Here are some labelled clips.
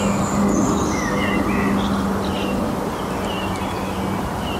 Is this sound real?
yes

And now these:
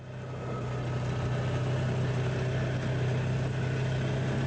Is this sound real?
yes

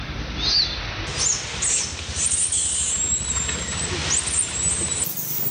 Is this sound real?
yes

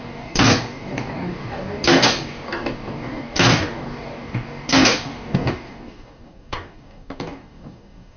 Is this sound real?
no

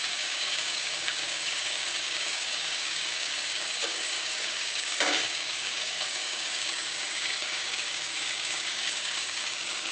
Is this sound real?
no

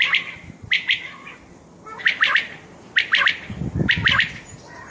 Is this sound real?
yes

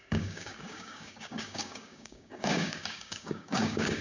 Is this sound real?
no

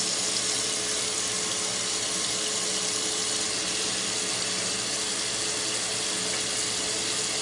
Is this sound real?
yes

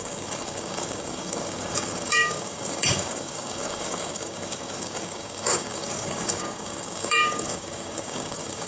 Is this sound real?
no